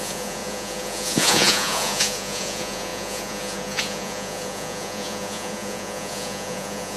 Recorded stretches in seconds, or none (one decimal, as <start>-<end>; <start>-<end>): none